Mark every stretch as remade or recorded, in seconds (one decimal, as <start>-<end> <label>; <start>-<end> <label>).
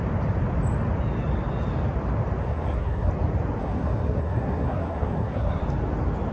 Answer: 0.0-2.4 recorded; 2.4-3.1 remade; 3.1-3.6 recorded; 3.6-5.6 remade; 5.6-6.3 recorded